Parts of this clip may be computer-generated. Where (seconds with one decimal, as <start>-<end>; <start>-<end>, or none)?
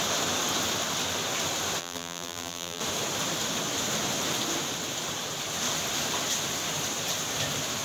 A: 1.8-2.8